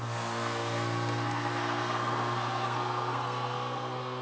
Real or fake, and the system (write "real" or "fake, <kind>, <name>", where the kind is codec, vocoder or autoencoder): fake, codec, SNAC